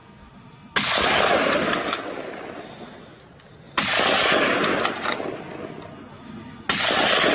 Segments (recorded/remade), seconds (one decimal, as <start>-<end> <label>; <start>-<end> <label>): 0.0-7.3 recorded